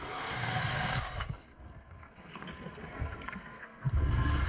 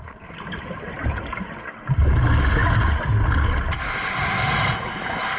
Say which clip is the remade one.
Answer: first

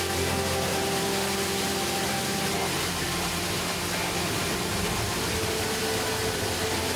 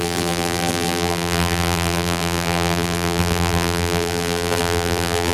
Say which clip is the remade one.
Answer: second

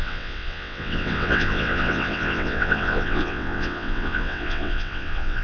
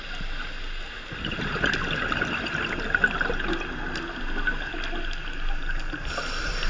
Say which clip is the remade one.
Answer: first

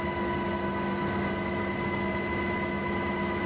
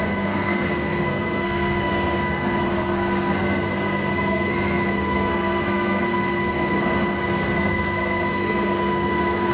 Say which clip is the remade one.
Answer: second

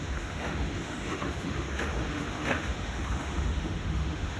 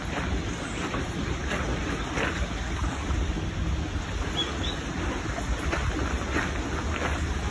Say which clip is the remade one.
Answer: first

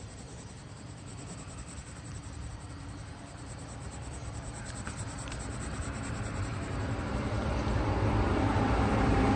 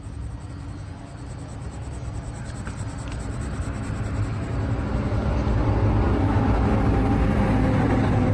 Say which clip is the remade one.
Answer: first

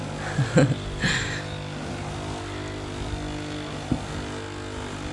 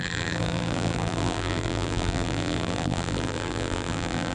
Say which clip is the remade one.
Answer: second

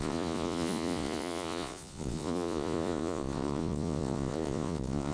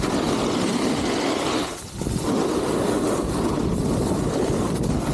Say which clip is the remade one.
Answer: first